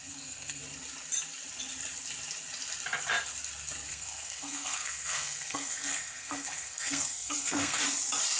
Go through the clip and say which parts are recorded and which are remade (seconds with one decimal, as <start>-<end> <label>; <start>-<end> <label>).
0.0-0.6 remade; 0.6-3.9 recorded; 3.9-7.8 remade; 7.8-8.4 recorded